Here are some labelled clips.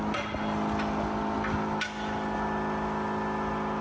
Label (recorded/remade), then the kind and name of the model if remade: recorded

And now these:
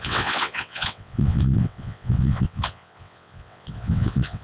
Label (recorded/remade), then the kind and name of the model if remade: remade, vocoder, WaveNeXt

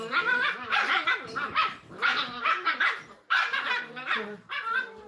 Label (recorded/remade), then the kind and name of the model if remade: remade, vocoder, BigVGAN v2